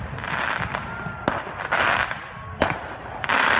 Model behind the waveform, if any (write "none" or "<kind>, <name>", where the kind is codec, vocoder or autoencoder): none